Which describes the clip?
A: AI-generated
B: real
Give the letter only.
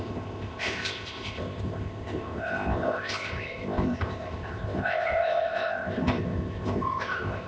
A